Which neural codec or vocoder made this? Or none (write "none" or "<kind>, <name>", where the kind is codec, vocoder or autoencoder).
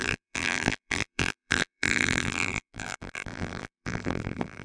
vocoder, BigVGAN v2